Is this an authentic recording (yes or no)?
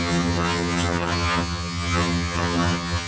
no